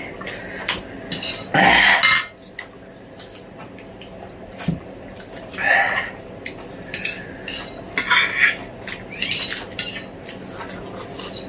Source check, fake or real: real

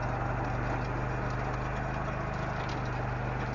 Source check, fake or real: real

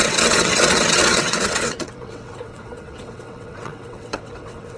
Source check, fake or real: fake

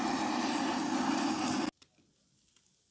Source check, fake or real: real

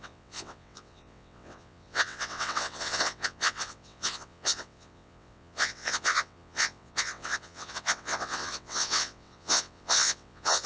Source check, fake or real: fake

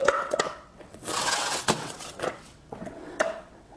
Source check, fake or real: fake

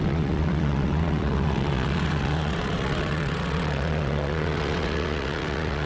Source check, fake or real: fake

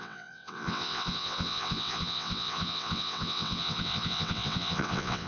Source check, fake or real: fake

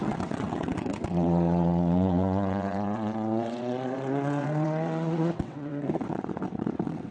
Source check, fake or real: fake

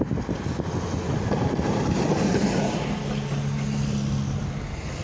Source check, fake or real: real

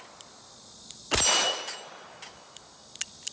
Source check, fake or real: real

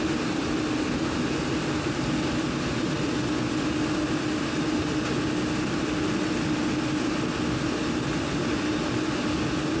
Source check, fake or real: real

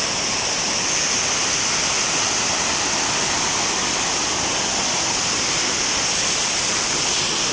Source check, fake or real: real